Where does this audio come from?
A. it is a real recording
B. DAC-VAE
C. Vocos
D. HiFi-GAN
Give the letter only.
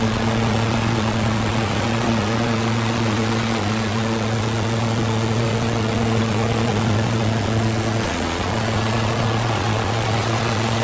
C